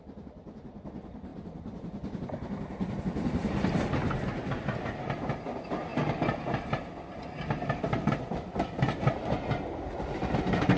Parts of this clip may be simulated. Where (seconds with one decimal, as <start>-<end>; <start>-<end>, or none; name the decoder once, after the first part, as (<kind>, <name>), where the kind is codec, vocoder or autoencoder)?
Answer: none